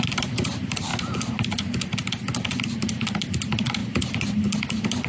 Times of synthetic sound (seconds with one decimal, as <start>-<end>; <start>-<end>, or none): 0.0-0.9; 2.6-5.1